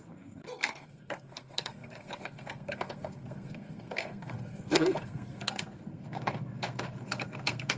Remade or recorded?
remade